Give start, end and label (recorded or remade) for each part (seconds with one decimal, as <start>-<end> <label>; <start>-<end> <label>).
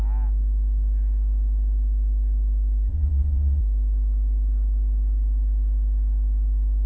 0.0-2.9 recorded; 2.9-3.6 remade; 3.6-6.9 recorded